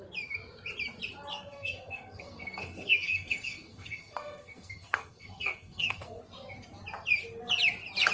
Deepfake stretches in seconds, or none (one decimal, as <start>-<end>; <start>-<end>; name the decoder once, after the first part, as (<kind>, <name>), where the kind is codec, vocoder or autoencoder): 1.3-6.2 (codec, SNAC)